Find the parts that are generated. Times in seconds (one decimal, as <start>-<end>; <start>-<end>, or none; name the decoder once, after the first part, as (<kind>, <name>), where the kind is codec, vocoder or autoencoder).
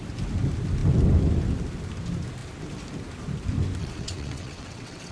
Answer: 3.8-5.1 (vocoder, WaveNeXt)